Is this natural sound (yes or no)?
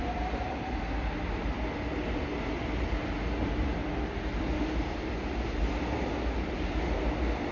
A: yes